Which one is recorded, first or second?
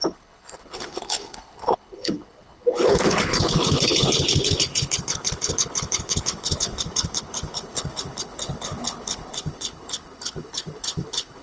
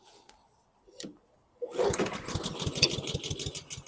second